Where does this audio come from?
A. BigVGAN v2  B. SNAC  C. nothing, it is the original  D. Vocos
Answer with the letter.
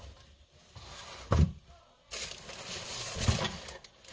C